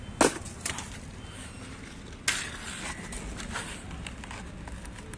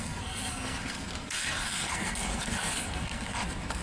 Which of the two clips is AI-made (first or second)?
second